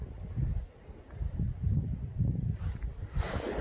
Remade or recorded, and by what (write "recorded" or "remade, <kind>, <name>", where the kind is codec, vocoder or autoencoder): recorded